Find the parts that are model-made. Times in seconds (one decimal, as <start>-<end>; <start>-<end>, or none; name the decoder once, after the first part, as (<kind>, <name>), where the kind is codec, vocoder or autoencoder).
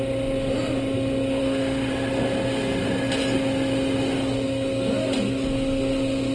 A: 1.4-1.9 (autoencoder, DAC-VAE)